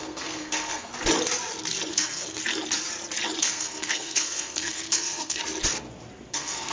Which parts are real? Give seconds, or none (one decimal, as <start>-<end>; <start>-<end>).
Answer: 0.9-1.9; 2.4-3.4; 5.4-6.3